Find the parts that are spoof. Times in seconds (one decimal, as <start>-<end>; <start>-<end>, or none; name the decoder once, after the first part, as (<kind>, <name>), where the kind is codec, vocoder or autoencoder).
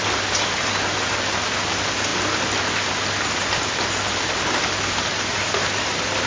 none